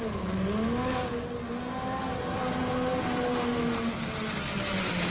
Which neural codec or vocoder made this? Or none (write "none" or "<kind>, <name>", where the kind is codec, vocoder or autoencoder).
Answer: none